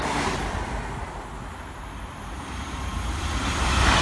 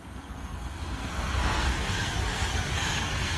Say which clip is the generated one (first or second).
second